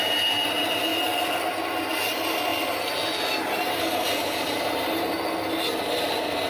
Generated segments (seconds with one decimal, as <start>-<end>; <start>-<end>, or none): none